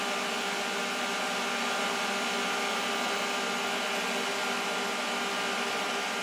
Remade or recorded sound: recorded